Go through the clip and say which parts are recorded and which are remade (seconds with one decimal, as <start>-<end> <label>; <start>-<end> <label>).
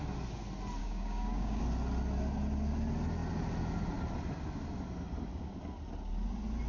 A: 0.0-0.8 recorded; 0.8-1.6 remade; 1.6-6.7 recorded